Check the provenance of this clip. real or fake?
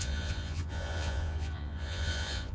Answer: fake